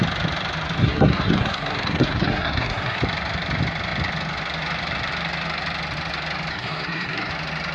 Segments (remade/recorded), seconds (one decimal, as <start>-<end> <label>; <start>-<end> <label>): 0.0-0.8 recorded; 0.8-3.0 remade; 3.0-6.5 recorded; 6.5-7.3 remade; 7.3-7.7 recorded